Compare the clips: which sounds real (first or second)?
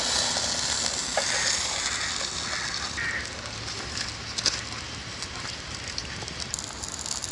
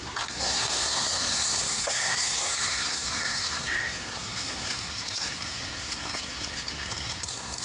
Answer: first